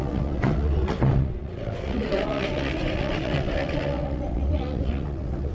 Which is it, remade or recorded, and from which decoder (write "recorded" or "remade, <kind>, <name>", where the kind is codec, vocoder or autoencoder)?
remade, vocoder, WaveNeXt